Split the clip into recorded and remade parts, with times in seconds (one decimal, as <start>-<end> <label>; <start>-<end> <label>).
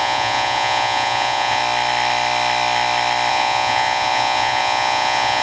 0.0-1.6 remade; 1.6-3.3 recorded; 3.3-5.4 remade